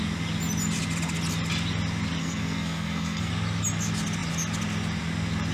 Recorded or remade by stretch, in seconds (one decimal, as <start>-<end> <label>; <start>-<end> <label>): 0.0-2.2 recorded; 2.2-3.3 remade; 3.3-5.5 recorded